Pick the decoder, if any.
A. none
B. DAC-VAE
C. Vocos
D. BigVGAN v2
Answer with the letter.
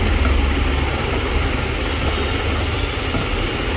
A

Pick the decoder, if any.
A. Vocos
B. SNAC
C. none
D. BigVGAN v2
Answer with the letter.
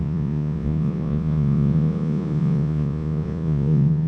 A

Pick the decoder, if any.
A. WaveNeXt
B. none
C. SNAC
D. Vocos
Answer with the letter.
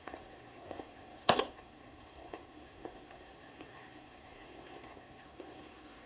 C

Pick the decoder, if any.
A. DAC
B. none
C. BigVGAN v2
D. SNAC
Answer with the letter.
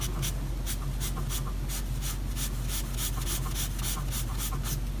B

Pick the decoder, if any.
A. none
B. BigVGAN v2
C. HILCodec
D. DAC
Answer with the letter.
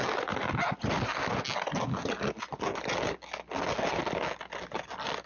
A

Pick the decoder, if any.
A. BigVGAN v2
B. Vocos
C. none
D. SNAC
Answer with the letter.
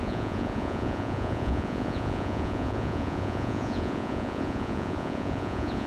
B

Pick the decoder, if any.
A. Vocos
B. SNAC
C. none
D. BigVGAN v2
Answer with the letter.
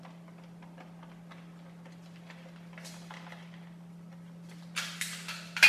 C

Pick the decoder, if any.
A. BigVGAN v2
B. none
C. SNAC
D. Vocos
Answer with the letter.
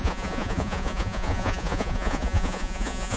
D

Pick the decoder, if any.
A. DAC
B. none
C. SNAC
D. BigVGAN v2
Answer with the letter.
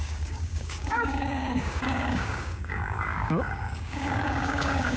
A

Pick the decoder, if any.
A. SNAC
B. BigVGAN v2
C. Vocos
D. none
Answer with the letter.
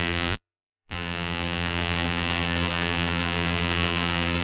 B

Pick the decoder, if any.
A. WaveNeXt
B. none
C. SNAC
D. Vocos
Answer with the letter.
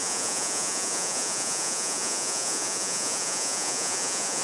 D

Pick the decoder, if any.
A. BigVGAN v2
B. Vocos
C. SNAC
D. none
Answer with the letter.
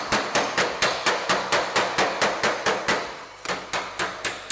D